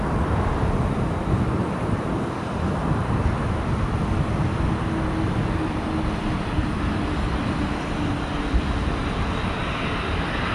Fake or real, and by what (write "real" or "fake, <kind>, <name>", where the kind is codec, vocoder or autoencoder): fake, vocoder, BigVGAN v2